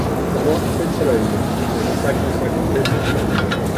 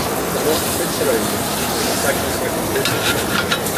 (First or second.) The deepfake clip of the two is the second